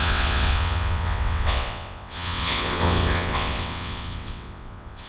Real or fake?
fake